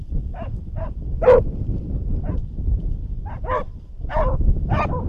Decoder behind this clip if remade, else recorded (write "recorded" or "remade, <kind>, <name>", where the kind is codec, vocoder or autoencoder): remade, vocoder, BigVGAN v2